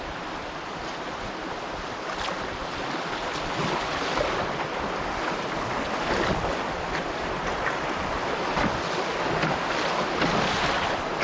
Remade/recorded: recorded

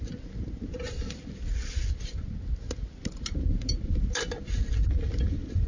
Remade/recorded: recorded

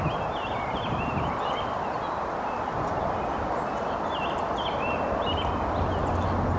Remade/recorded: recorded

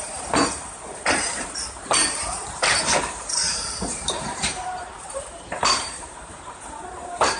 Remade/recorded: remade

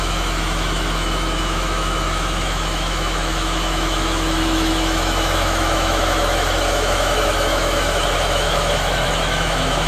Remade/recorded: remade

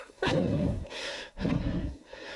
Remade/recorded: remade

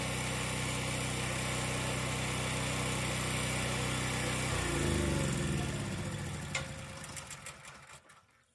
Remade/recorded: recorded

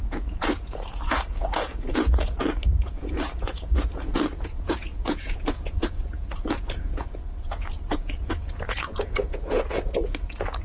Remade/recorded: remade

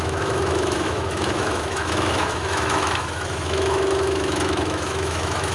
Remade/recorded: remade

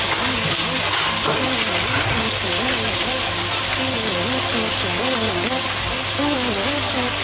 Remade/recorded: recorded